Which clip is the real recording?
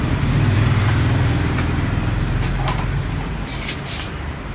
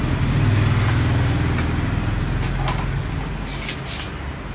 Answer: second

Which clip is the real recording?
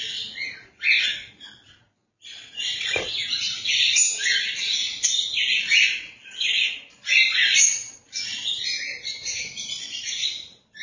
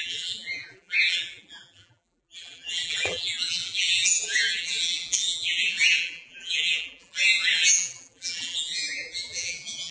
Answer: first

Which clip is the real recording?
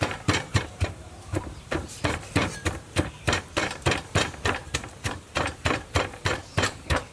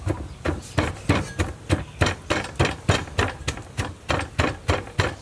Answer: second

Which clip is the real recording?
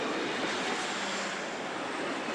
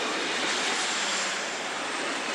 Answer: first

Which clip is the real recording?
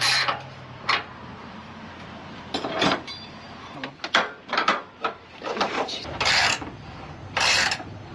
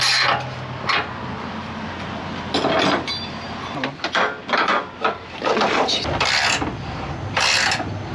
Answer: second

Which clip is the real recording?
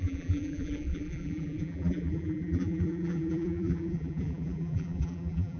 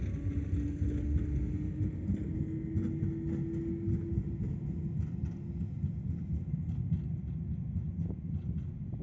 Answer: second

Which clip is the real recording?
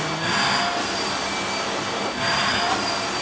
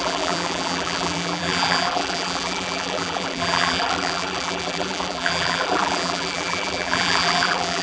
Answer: first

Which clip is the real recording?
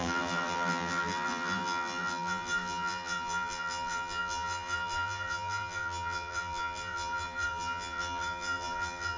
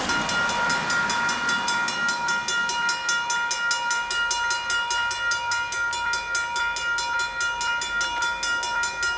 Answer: second